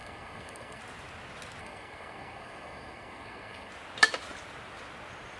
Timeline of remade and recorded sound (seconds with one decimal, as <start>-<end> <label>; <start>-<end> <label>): 0.0-0.8 remade; 0.8-1.6 recorded; 1.6-3.7 remade; 3.7-5.4 recorded